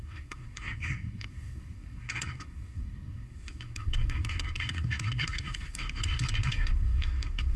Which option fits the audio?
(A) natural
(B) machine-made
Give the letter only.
B